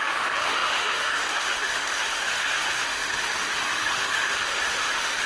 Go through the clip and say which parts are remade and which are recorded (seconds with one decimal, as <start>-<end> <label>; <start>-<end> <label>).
0.0-5.3 remade